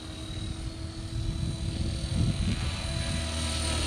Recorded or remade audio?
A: recorded